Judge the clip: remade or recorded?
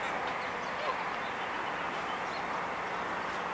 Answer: recorded